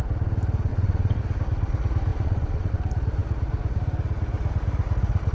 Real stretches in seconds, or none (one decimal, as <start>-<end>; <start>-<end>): 0.0-0.7; 1.2-2.1; 2.7-5.3